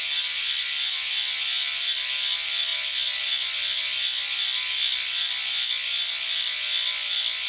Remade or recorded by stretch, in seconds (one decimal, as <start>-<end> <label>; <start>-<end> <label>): 0.0-7.5 recorded